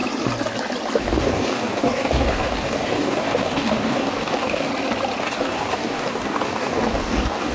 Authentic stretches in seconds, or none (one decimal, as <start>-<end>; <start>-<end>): 0.0-1.0; 4.7-5.2